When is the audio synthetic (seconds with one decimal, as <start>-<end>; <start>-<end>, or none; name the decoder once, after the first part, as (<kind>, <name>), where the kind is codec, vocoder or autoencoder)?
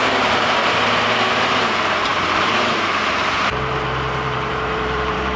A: 0.0-0.6 (vocoder, BigVGAN v2); 1.3-5.4